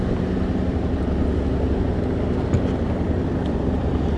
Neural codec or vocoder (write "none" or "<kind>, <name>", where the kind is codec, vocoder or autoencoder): none